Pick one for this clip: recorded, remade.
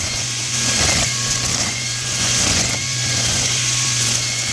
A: remade